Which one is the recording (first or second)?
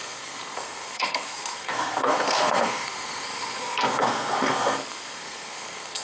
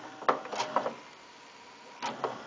second